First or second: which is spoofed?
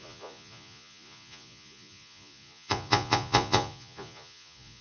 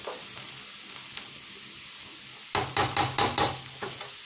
first